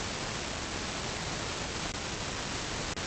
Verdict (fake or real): real